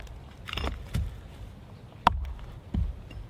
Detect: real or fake real